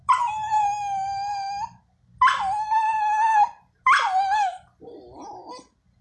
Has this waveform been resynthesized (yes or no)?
no